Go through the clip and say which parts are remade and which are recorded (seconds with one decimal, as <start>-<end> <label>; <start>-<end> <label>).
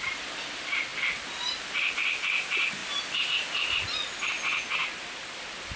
0.0-2.8 recorded; 2.8-4.3 remade; 4.3-5.8 recorded